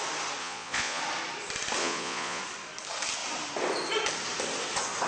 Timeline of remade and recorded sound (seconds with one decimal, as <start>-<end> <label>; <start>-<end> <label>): 0.0-0.4 recorded; 0.4-1.0 remade; 1.0-1.8 recorded; 1.8-2.4 remade; 2.4-5.1 recorded